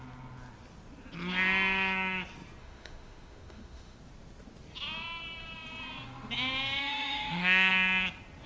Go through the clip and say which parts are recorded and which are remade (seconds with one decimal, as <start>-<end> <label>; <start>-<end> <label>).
0.0-2.6 recorded; 2.6-4.0 remade; 4.0-6.8 recorded; 6.8-7.7 remade; 7.7-8.5 recorded